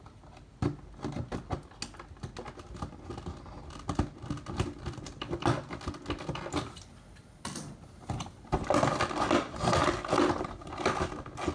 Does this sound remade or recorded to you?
recorded